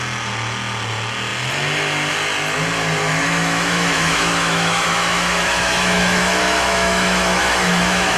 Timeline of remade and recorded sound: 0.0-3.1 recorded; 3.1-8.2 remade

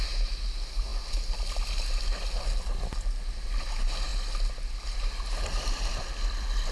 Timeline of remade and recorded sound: 0.0-6.7 recorded

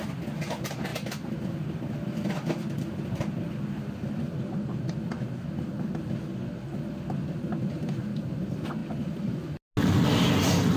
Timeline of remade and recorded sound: 0.0-10.8 recorded

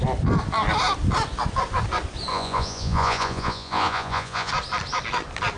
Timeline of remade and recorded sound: 0.0-2.3 recorded; 2.3-4.5 remade; 4.5-5.6 recorded